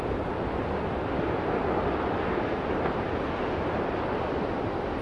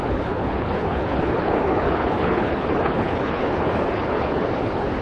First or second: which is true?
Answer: first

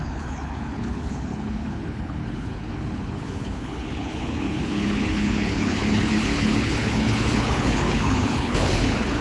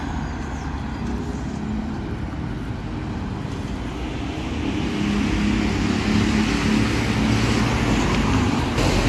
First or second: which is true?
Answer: second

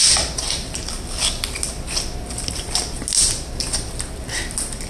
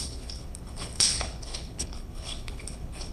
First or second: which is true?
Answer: first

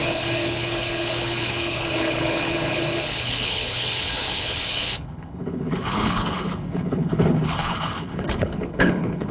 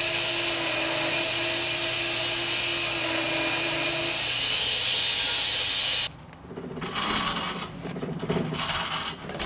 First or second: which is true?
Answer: second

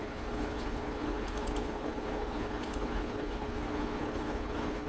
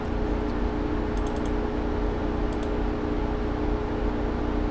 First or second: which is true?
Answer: second